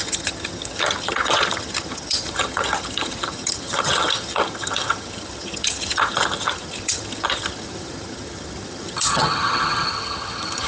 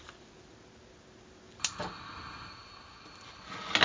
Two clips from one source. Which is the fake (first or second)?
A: first